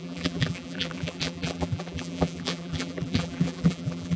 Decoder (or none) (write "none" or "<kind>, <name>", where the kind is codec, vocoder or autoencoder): vocoder, BigVGAN v2